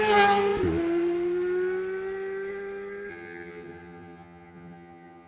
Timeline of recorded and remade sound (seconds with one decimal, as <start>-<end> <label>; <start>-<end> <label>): 0.0-3.1 recorded; 3.1-5.3 remade